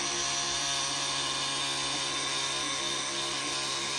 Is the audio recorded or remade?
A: recorded